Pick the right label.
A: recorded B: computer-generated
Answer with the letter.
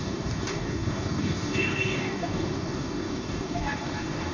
B